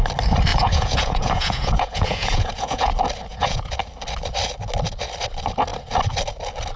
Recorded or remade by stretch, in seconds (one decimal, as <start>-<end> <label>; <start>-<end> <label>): 0.0-0.5 recorded; 0.5-2.9 remade; 2.9-3.3 recorded; 3.3-3.8 remade; 3.8-6.8 recorded